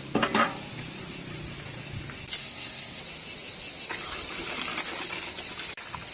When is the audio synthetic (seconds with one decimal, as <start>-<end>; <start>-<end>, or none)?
2.4-3.0